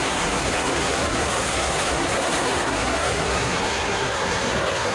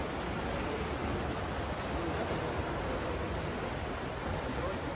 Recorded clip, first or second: second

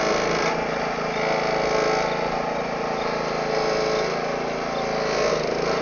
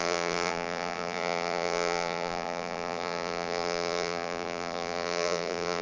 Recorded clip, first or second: first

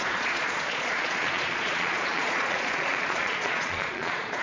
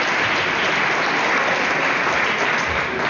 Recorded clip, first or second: second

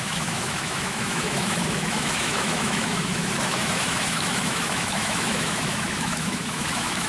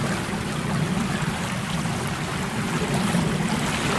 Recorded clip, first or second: second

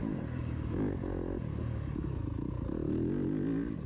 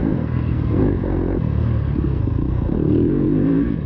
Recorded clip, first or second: first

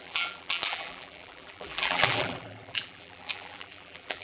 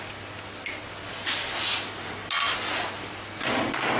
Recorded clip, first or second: second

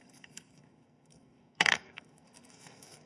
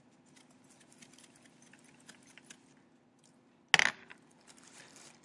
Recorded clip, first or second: second